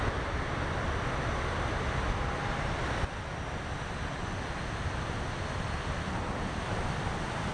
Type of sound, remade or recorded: recorded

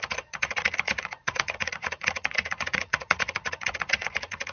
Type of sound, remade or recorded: remade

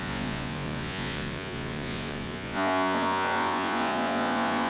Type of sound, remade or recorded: remade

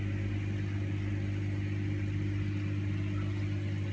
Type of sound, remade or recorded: recorded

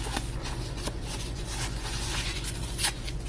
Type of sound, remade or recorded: remade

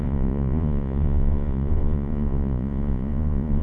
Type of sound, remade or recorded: remade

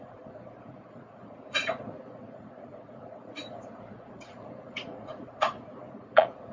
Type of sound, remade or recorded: remade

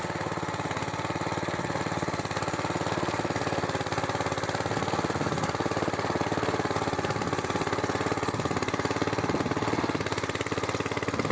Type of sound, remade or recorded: recorded